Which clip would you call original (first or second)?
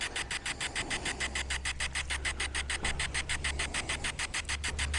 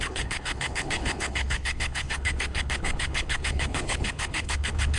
first